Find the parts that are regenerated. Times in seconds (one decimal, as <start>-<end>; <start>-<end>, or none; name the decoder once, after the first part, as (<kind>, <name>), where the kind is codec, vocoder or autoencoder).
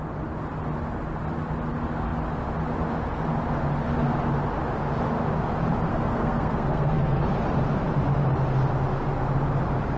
5.9-7.2 (codec, SNAC)